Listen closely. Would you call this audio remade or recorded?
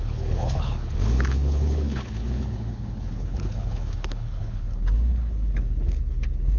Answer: remade